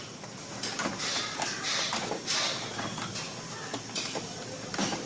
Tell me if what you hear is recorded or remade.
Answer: recorded